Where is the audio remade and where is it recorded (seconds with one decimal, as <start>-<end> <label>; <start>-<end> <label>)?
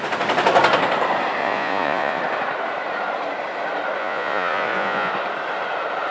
0.0-1.4 recorded; 1.4-2.2 remade; 2.2-4.0 recorded; 4.0-5.1 remade; 5.1-6.1 recorded